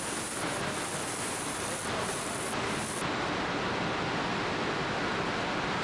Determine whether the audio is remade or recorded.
recorded